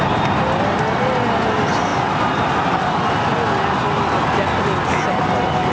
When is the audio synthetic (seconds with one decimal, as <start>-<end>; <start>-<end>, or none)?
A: none